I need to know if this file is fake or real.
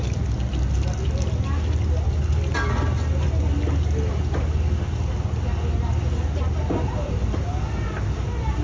real